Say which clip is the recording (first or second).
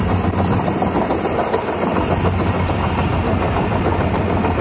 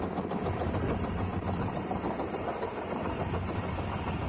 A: first